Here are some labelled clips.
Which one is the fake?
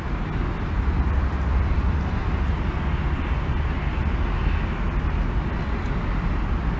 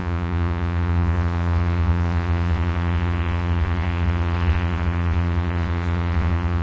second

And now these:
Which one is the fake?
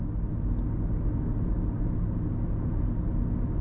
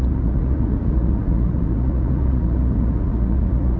second